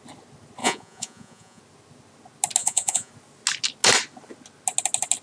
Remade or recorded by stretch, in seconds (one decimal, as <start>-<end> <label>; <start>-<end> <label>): 0.0-0.6 recorded; 0.6-1.6 remade; 1.6-2.6 recorded; 2.6-3.1 remade; 3.1-5.2 recorded